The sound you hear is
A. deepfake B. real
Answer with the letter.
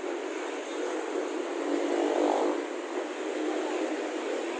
B